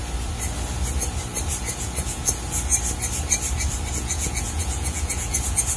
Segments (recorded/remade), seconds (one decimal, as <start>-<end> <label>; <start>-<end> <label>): 0.0-1.6 recorded; 1.6-2.2 remade; 2.2-3.9 recorded; 3.9-5.8 remade